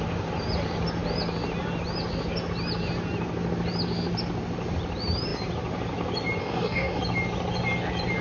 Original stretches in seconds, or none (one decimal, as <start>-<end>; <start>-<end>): 0.0-6.4; 7.0-8.2